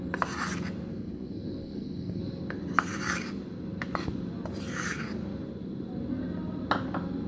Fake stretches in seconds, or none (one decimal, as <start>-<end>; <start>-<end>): 0.9-2.2